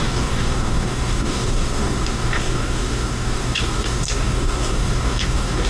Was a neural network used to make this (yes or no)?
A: yes